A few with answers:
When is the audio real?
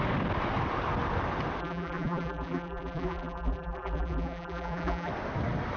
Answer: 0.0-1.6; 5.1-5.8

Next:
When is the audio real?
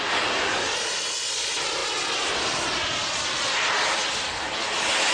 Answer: 0.0-5.1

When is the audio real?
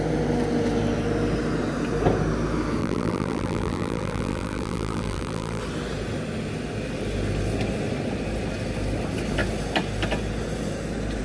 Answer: 0.0-2.8; 5.6-11.2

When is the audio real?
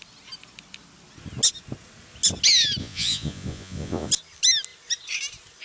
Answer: 0.0-2.8; 4.1-5.6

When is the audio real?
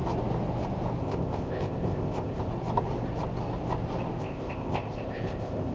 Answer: 0.0-1.0; 2.5-4.2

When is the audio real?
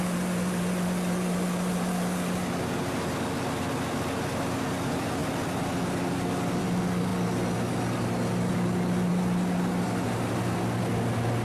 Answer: 0.0-11.4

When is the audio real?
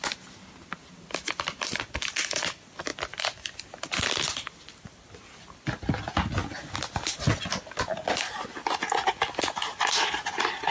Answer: 0.0-10.7